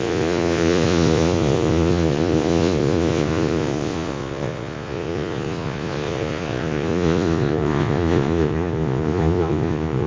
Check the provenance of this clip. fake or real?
fake